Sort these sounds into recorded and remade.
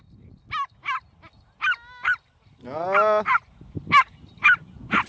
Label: recorded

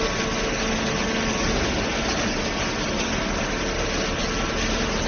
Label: recorded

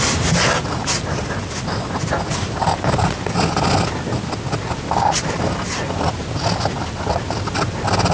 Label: recorded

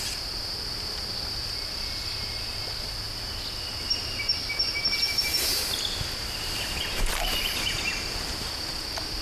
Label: recorded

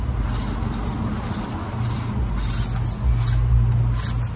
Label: recorded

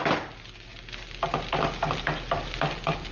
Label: recorded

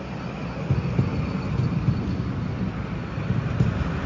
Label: recorded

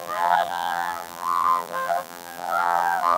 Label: remade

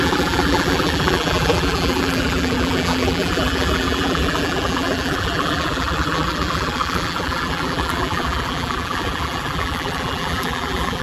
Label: remade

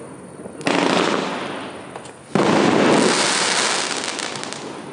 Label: recorded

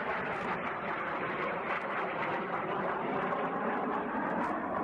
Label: remade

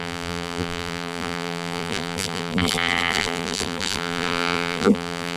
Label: remade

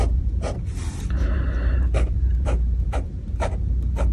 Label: remade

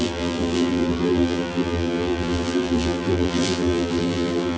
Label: remade